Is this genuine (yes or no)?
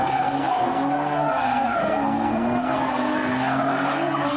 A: no